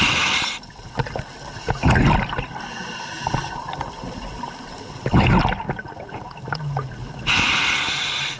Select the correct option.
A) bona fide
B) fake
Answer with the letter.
A